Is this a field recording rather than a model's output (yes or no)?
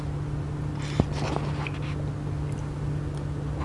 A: yes